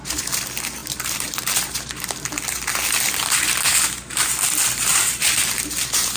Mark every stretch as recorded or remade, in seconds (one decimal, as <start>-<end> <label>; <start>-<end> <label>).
0.0-0.8 recorded; 0.8-2.0 remade; 2.0-4.9 recorded; 4.9-6.2 remade